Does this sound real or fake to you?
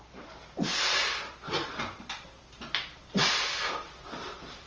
fake